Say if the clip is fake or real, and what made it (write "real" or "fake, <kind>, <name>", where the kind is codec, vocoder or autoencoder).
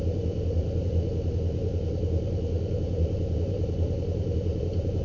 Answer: fake, vocoder, BigVGAN v2